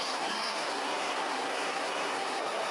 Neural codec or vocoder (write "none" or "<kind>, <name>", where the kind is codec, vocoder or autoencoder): codec, SNAC